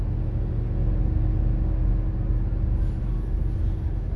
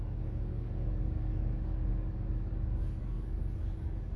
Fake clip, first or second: second